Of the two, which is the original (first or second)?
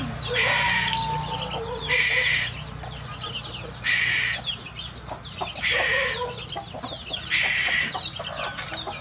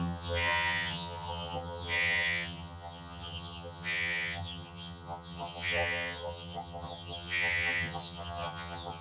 first